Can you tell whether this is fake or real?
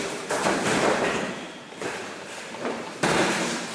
fake